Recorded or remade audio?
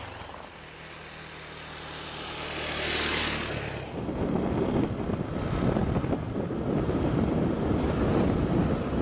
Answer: recorded